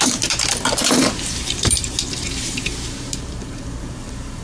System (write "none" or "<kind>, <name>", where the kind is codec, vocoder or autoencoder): vocoder, BigVGAN v2